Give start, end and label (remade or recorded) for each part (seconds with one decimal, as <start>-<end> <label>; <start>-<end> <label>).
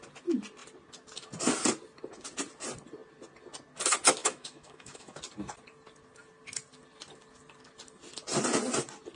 0.0-4.2 recorded; 4.2-5.2 remade; 5.2-9.2 recorded